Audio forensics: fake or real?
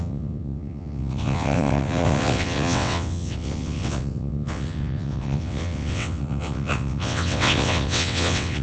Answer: fake